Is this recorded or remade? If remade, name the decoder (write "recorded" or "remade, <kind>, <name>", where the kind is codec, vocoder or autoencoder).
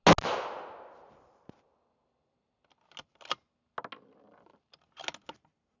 recorded